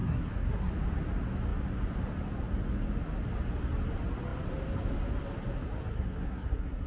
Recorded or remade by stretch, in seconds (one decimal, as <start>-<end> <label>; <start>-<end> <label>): 0.0-0.7 remade; 0.7-5.9 recorded; 5.9-6.9 remade